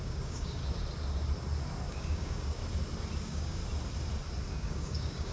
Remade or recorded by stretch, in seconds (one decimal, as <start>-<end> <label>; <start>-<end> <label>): 0.0-0.6 remade; 0.6-1.9 recorded; 1.9-2.6 remade; 2.6-3.2 recorded; 3.2-3.6 remade; 3.6-4.5 recorded; 4.5-5.3 remade